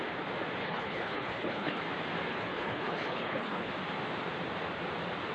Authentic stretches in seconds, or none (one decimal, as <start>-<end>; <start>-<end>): 0.0-0.6; 1.8-2.3; 3.7-5.3